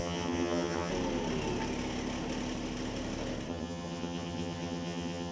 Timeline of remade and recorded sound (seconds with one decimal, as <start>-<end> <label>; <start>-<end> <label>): 0.0-0.9 remade; 0.9-3.5 recorded; 3.5-5.3 remade